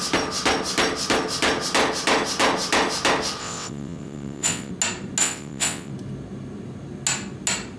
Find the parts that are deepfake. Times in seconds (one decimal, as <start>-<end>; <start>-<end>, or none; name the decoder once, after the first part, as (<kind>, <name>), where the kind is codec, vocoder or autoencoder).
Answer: 3.4-4.7 (vocoder, WaveNeXt); 5.2-5.9